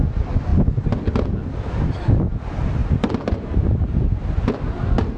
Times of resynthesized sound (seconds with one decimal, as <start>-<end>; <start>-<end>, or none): none

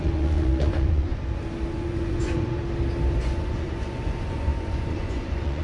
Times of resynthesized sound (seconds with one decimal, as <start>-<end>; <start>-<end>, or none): 0.0-1.1; 1.7-2.6; 3.2-5.6

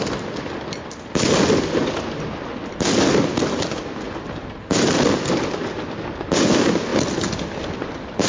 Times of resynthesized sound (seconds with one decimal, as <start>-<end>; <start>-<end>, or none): none

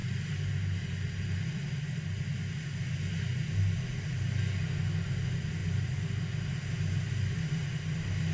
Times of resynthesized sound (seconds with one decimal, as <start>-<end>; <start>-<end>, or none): none

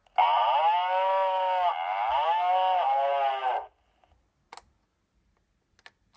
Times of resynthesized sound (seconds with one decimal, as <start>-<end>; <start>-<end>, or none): none

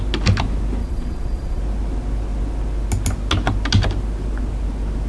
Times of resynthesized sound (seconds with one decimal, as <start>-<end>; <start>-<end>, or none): 0.8-1.6

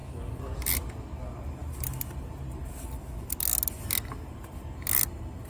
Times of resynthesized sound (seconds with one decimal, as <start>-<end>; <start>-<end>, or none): none

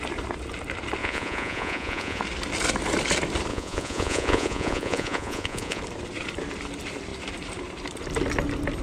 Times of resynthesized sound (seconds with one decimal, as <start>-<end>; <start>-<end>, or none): 1.0-2.2; 3.5-5.8